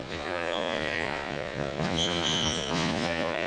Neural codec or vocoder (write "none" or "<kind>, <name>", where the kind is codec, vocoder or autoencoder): vocoder, Vocos